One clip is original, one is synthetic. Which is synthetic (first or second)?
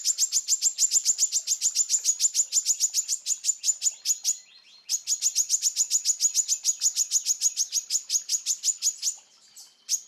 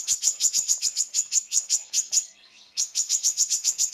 second